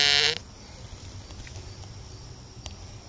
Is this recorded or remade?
recorded